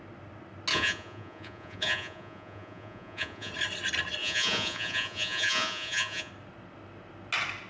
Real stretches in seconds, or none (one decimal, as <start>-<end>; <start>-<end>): 0.0-0.7; 3.5-4.2; 6.3-7.7